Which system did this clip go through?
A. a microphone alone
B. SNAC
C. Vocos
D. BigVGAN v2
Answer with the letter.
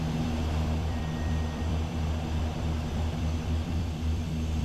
D